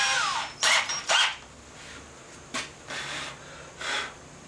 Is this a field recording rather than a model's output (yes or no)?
yes